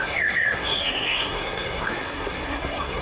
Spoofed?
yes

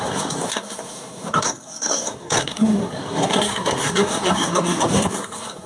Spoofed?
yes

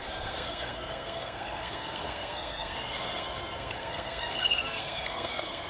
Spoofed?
yes